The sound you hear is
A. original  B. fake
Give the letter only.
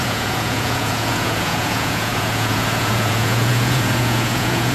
B